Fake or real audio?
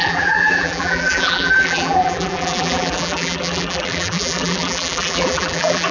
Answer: fake